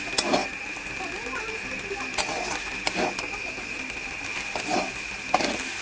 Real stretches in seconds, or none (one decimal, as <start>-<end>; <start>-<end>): 0.0-5.8